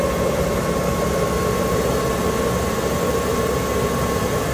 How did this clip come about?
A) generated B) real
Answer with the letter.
B